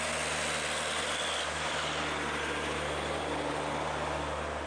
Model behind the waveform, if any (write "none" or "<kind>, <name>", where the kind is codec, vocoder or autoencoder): none